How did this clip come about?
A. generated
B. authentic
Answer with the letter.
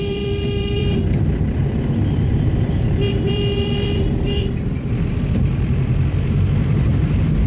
A